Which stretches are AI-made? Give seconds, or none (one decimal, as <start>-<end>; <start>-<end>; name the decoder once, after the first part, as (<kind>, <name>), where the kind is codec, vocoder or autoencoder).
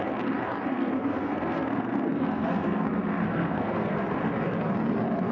0.7-3.9 (codec, SNAC)